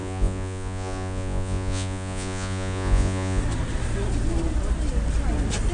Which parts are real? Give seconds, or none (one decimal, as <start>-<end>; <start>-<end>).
3.4-5.7